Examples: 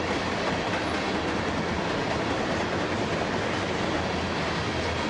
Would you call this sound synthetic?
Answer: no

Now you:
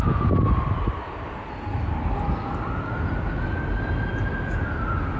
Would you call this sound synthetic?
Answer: no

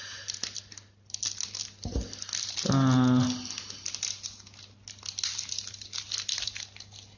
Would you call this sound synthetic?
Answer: no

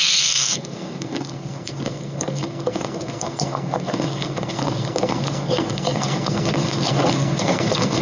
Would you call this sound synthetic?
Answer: yes